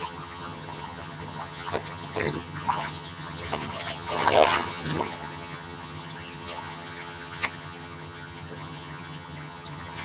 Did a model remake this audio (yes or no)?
yes